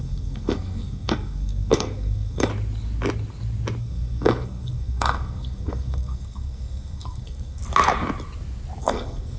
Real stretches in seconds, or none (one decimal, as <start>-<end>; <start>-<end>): 2.5-3.8; 7.6-8.8

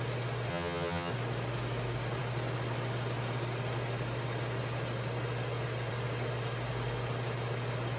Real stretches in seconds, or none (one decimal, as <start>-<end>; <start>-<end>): 0.0-0.5; 1.1-8.0

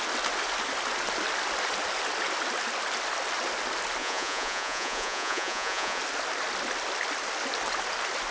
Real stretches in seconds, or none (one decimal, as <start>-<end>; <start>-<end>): 0.0-4.0; 6.0-8.3

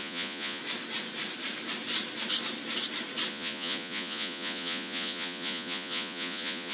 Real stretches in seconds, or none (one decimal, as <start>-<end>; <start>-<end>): 0.6-3.3